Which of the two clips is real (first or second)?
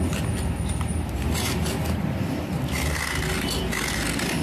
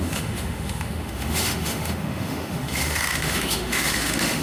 first